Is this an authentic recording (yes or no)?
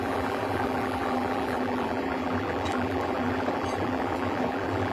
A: no